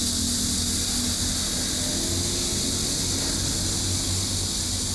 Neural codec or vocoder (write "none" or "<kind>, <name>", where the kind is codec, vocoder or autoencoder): none